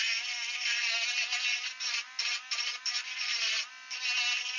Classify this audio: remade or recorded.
recorded